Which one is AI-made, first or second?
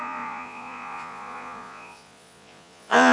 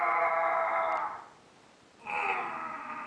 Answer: first